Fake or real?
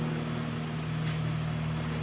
real